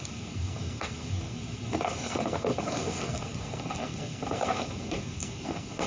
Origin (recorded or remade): remade